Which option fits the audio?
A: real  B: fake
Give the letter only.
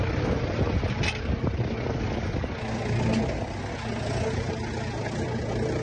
A